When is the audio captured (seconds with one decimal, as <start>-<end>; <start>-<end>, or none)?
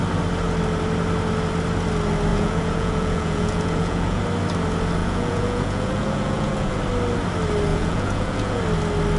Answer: 0.0-2.3; 4.2-5.0; 6.8-7.7; 8.6-9.2